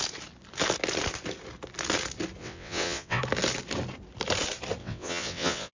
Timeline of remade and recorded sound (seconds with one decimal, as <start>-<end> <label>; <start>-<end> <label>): 0.0-2.4 recorded; 2.4-3.2 remade; 3.2-4.8 recorded; 4.8-5.7 remade